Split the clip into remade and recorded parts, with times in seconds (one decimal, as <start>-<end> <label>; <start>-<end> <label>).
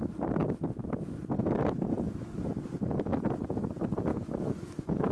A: 0.0-4.1 recorded; 4.1-5.1 remade